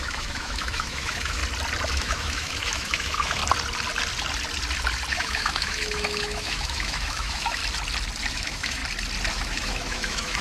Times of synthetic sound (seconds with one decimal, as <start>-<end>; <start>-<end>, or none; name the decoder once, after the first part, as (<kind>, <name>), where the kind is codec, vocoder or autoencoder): 0.0-1.4 (autoencoder, DAC-VAE); 1.9-3.4; 5.1-7.6; 8.3-8.8; 9.3-10.4